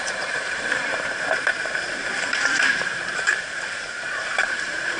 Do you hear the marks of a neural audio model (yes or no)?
yes